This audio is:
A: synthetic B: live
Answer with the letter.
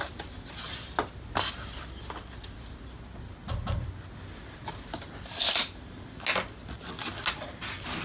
B